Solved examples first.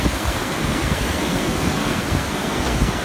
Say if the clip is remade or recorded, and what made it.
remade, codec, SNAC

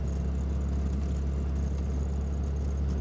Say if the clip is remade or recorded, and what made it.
recorded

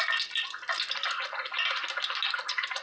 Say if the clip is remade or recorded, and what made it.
recorded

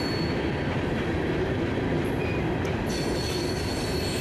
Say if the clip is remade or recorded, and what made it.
recorded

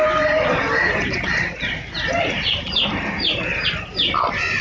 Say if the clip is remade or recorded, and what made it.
remade, vocoder, BigVGAN v2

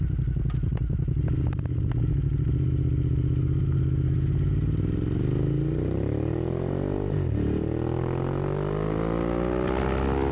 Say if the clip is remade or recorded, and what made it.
recorded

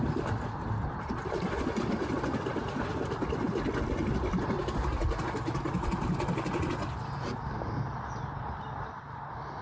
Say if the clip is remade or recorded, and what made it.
recorded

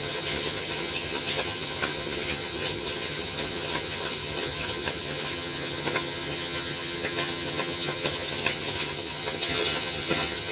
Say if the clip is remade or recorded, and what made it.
remade, vocoder, HiFi-GAN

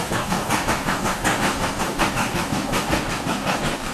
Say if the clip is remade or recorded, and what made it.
remade, codec, DAC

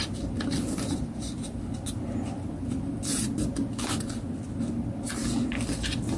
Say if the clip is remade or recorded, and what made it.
recorded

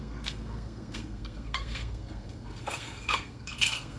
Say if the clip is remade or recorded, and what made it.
remade, codec, SNAC